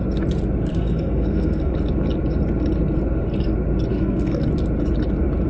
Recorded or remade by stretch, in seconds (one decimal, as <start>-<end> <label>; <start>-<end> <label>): 0.0-0.7 recorded; 0.7-1.7 remade; 1.7-3.9 recorded; 3.9-4.5 remade; 4.5-5.5 recorded